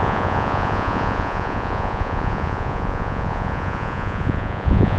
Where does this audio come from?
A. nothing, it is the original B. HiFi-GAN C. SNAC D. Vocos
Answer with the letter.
D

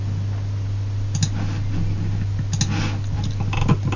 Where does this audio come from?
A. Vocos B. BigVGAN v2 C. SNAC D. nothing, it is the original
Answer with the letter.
D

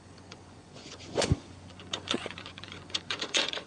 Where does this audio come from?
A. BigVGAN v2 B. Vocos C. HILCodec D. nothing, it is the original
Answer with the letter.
B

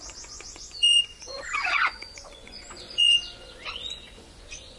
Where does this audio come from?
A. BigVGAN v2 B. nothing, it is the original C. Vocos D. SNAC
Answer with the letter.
C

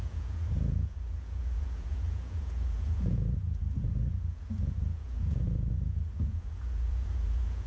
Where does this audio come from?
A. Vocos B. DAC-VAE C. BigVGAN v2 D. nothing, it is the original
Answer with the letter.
A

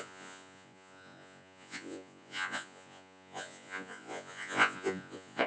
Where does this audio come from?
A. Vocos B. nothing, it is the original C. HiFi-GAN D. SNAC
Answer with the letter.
A